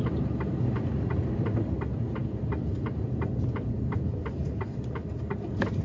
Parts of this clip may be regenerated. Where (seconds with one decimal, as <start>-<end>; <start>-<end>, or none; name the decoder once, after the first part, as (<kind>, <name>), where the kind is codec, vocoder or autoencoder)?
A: 0.0-5.8 (vocoder, BigVGAN v2)